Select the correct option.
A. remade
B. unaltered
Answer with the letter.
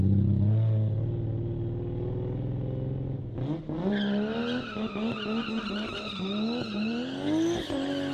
B